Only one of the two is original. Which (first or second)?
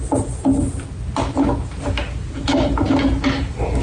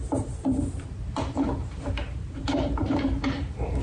first